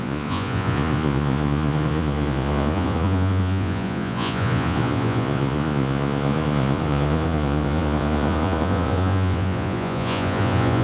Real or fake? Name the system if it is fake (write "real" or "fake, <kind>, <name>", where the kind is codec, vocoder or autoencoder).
fake, vocoder, Vocos